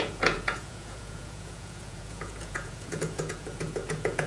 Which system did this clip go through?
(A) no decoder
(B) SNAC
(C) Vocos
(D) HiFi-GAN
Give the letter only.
C